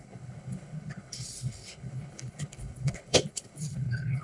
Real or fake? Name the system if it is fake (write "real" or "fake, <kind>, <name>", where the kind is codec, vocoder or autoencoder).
fake, codec, HILCodec